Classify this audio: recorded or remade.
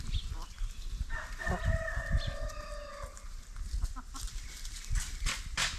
recorded